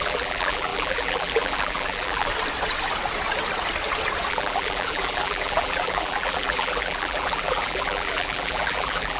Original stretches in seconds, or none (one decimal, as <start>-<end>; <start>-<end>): 2.3-4.3